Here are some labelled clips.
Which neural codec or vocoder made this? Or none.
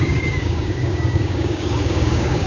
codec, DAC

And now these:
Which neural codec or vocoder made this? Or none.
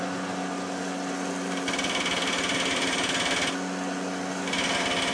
none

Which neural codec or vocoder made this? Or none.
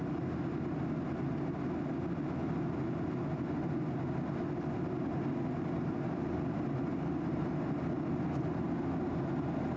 none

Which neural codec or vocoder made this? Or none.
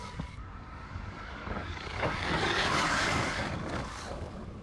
codec, DAC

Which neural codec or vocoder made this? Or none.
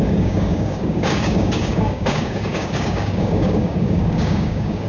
codec, DAC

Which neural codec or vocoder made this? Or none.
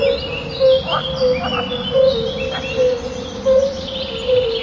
none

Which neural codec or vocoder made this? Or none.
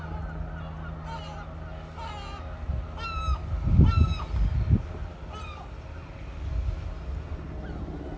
none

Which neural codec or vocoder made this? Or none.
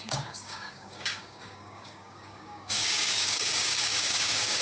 codec, DAC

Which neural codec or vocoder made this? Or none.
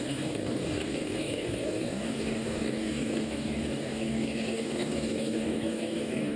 codec, DAC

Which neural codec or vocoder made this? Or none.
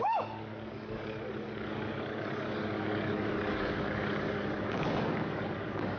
codec, DAC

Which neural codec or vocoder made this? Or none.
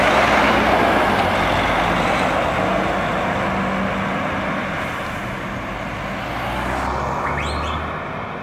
none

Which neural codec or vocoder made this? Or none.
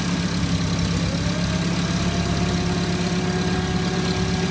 none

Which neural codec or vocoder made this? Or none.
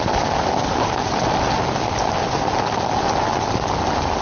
none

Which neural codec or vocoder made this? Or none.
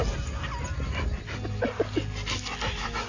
none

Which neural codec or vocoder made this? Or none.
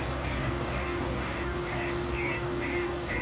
codec, DAC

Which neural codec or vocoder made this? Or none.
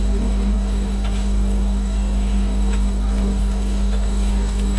codec, DAC